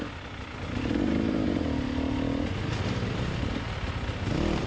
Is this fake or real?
real